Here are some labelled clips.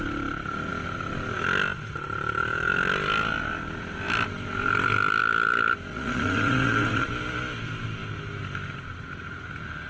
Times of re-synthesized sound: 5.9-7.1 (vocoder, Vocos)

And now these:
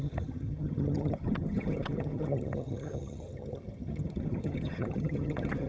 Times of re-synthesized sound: 0.0-5.7 (vocoder, HiFi-GAN)

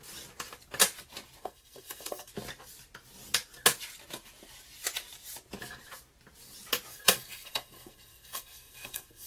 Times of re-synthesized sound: 1.4-2.3 (codec, SNAC); 6.9-9.3

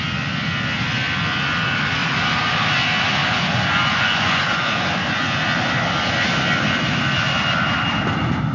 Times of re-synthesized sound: 3.2-5.4 (vocoder, Vocos)